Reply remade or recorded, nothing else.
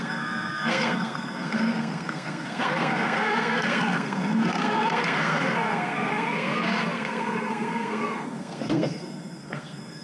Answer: remade